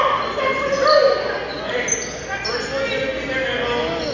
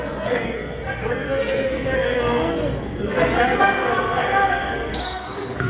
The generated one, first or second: second